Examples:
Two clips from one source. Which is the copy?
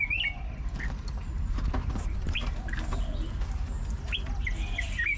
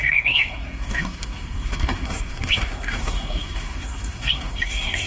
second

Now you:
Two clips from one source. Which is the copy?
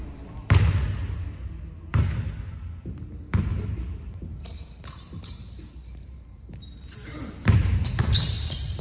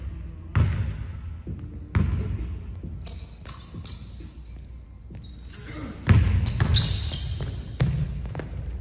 first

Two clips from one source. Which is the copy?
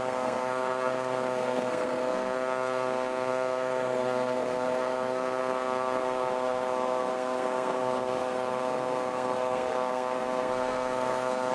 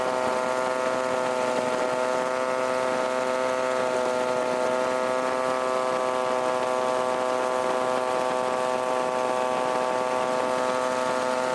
first